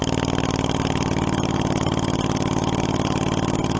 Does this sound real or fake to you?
real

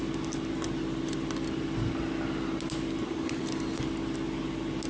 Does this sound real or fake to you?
real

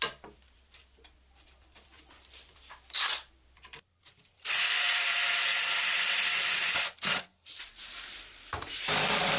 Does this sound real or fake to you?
fake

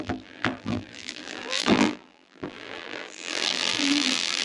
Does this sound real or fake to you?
fake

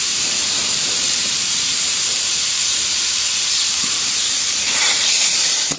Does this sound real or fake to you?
fake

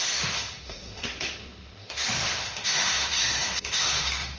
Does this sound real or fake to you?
fake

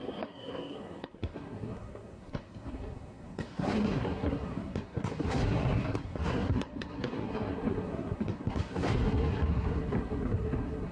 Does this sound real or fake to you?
fake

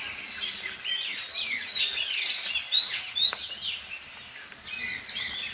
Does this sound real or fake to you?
real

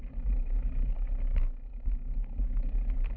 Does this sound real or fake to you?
real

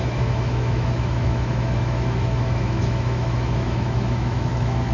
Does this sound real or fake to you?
fake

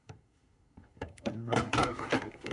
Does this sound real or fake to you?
fake